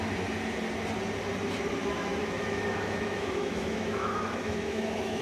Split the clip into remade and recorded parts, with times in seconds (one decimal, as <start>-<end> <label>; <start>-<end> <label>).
0.0-1.8 recorded; 1.8-5.2 remade